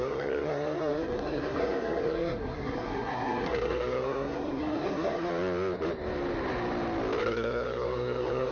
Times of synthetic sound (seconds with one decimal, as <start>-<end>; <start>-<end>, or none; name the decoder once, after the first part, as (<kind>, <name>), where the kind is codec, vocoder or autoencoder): 0.0-5.3 (codec, SNAC); 7.2-8.5